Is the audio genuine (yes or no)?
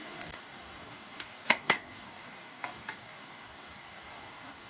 no